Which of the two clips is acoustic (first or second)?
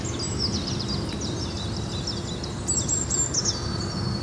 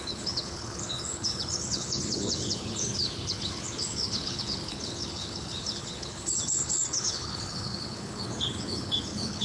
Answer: first